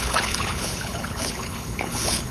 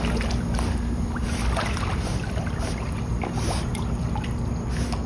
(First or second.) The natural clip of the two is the second